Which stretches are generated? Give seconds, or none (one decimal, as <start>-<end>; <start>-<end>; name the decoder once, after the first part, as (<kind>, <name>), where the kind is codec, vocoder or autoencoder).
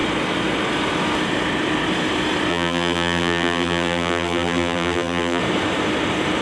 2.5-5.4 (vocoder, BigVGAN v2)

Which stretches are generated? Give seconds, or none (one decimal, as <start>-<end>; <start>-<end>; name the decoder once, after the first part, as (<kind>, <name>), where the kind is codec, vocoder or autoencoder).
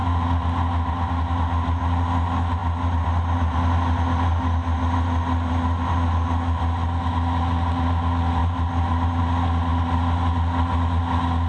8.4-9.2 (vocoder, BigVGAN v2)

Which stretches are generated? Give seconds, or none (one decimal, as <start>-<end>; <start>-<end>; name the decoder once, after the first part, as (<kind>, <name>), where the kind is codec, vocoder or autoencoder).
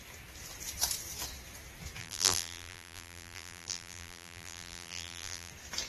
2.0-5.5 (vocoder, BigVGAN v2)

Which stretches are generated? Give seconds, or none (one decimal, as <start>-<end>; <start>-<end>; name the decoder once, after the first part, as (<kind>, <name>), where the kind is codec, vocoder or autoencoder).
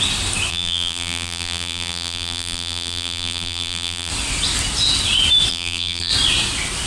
0.5-4.1 (vocoder, BigVGAN v2); 5.5-6.1